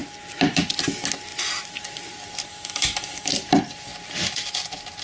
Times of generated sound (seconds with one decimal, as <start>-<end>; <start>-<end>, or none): 2.5-3.3

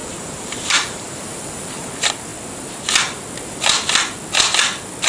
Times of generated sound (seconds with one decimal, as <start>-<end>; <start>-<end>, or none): 0.0-1.9